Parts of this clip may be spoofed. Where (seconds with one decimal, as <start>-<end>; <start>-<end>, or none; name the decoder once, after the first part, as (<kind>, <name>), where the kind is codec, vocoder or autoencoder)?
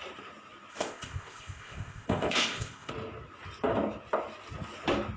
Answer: 0.7-2.9 (codec, ZipCodec)